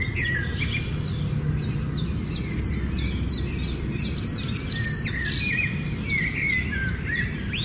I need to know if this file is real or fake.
real